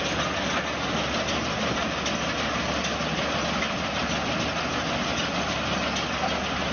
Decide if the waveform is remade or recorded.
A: recorded